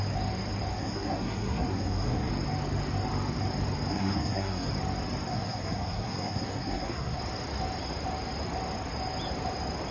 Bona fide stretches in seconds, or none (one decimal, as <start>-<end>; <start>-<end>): 0.0-0.7; 2.3-3.9; 4.7-5.3; 7.2-9.9